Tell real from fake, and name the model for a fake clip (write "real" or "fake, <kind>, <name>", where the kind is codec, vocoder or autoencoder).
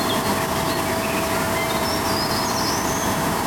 real